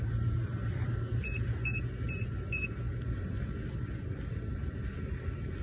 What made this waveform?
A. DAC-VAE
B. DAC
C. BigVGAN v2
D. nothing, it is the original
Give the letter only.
C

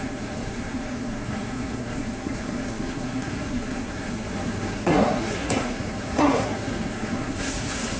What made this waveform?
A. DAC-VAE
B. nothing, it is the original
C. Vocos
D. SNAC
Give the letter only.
D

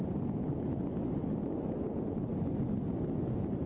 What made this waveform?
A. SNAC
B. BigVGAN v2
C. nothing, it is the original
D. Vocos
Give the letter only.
C